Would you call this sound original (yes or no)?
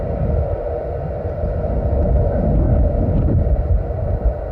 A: yes